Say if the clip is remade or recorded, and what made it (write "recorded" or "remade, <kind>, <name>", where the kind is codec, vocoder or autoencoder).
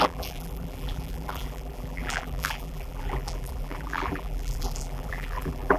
remade, vocoder, BigVGAN v2